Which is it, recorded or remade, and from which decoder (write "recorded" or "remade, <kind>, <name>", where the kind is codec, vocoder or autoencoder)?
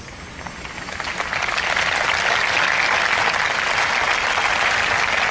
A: recorded